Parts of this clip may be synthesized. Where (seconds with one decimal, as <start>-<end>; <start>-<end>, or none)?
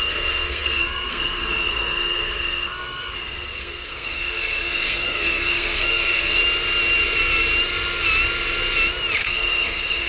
0.0-6.4; 9.2-10.1